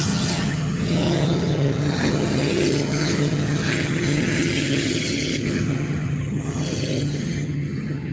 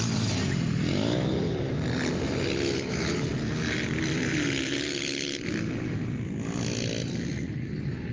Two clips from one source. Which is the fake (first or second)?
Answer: first